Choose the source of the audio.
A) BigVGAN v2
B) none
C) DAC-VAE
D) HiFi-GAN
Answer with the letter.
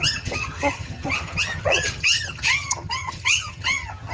D